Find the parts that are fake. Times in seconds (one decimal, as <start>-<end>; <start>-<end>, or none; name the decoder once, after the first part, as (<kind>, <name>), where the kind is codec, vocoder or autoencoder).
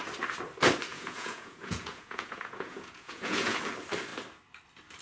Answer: 0.9-3.6 (vocoder, Vocos)